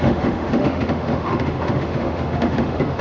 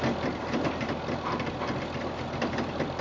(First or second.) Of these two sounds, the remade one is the first